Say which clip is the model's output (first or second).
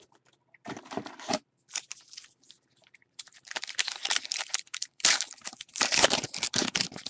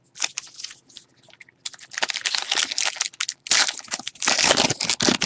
first